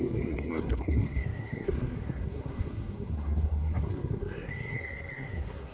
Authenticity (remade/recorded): remade